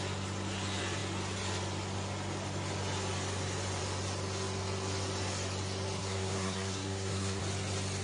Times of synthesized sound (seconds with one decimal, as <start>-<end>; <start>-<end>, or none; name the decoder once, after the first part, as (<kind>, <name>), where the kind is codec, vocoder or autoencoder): 6.0-7.4 (codec, SNAC)